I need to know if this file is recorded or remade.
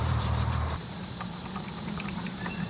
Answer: remade